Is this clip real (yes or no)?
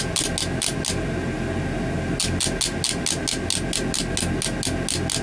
yes